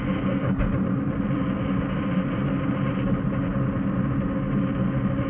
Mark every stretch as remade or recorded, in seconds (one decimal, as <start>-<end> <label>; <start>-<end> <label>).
0.0-5.3 recorded